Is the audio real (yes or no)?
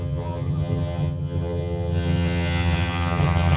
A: no